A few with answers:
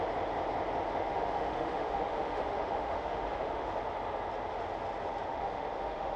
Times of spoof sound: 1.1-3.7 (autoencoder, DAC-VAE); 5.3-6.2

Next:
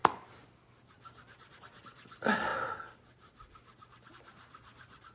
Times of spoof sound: 0.9-5.1 (vocoder, BigVGAN v2)

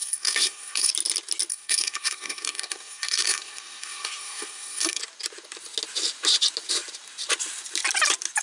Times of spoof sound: 0.0-0.9 (codec, SNAC); 1.5-5.0

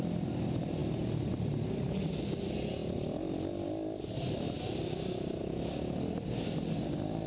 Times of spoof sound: none